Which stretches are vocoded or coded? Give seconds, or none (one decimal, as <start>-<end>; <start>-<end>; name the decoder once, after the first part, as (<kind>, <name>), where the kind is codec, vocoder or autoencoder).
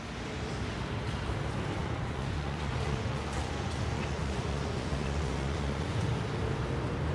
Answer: 1.8-6.1 (vocoder, Vocos)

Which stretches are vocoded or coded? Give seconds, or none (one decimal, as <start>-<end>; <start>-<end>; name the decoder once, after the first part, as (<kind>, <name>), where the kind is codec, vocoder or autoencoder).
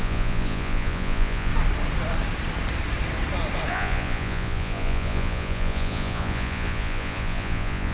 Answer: 0.0-1.5 (vocoder, Vocos); 3.7-7.9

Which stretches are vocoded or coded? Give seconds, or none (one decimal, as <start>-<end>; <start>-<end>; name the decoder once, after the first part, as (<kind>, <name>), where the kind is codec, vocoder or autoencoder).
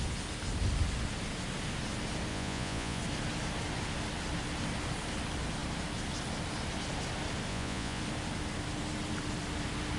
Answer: 2.3-3.0 (vocoder, Vocos); 7.5-8.0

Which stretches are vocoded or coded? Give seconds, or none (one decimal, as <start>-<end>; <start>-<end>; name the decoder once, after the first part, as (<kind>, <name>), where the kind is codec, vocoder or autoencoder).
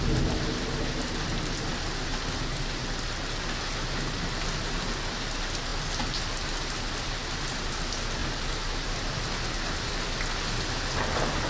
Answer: none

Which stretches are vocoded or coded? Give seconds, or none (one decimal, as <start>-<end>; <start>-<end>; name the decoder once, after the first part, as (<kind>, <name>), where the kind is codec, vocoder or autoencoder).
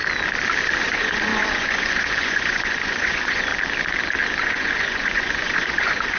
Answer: 0.8-3.5 (vocoder, Vocos); 4.4-6.2